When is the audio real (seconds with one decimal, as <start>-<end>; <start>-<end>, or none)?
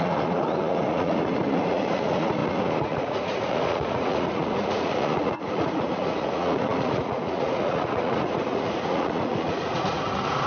none